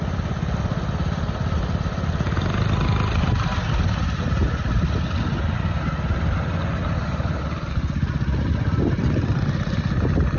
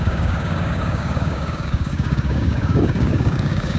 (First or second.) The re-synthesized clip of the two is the second